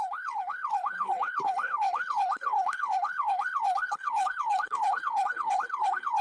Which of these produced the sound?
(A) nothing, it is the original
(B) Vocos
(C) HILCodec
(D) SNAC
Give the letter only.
C